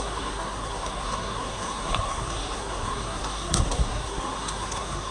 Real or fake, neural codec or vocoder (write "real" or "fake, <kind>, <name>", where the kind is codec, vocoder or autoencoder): fake, codec, SNAC